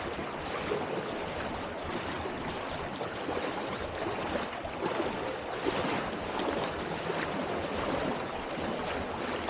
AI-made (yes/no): no